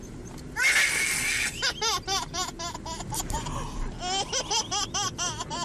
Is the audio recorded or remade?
recorded